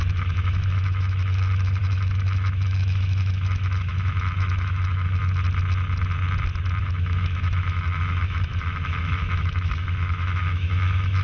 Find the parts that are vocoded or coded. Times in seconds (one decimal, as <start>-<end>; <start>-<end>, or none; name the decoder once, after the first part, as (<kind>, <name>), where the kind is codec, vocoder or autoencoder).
0.0-5.2 (autoencoder, DAC-VAE); 6.8-11.2